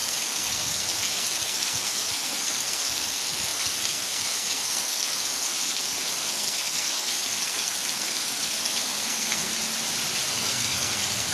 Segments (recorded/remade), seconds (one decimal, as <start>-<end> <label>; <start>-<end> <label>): 0.0-9.5 remade; 9.5-10.3 recorded; 10.3-11.3 remade